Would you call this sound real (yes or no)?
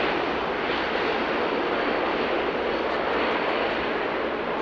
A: yes